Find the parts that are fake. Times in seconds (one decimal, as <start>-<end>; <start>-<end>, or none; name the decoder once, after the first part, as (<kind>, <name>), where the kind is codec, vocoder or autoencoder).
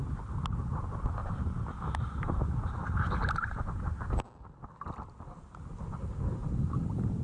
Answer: 1.2-4.1 (vocoder, BigVGAN v2); 6.4-7.2